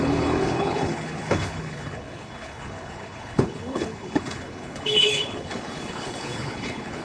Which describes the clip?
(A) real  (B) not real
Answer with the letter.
B